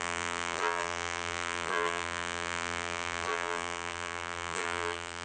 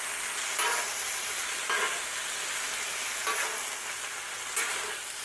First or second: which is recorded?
second